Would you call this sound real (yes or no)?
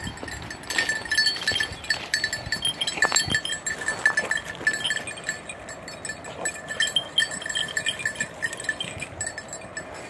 yes